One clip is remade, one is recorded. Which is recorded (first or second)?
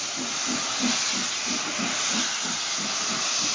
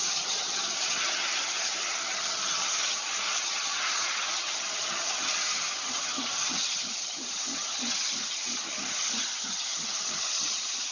first